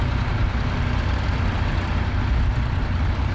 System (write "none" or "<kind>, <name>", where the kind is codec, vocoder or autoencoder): none